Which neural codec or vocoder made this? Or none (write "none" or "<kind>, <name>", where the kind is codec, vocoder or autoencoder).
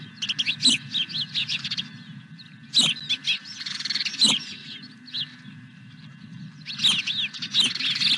none